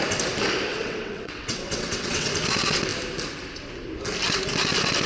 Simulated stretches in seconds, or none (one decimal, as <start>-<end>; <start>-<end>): 0.7-2.3